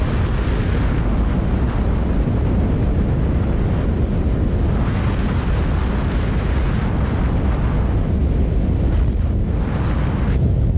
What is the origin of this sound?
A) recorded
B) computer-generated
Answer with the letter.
A